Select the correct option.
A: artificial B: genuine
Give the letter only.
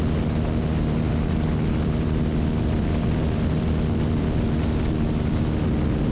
B